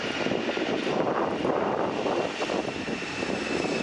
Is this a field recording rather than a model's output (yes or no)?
yes